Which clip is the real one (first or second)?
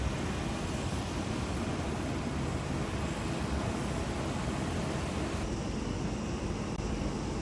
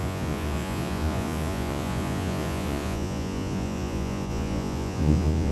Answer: first